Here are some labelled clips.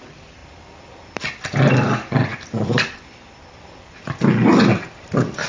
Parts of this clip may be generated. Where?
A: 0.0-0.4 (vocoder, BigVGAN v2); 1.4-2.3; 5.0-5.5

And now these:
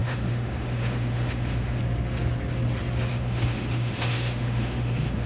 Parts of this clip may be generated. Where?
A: 0.0-1.8 (autoencoder, DAC-VAE); 3.1-5.3

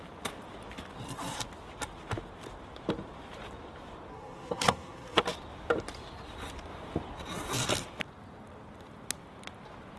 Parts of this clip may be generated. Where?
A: 4.1-5.2 (codec, SNAC)

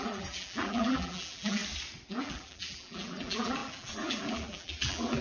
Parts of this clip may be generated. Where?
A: 0.0-1.6 (vocoder, BigVGAN v2); 2.1-5.2

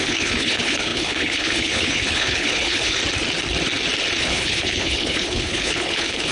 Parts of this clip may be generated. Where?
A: 0.0-3.0 (codec, HILCodec); 4.2-6.3